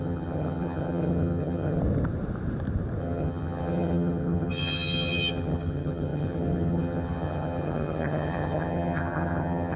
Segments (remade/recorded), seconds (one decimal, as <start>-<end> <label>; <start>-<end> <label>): 0.0-1.8 remade; 1.8-3.0 recorded; 3.0-9.8 remade